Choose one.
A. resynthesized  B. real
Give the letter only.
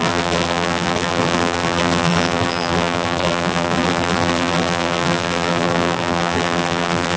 A